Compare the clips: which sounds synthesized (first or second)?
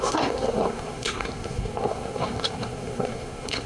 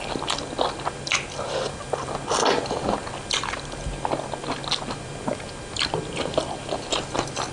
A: first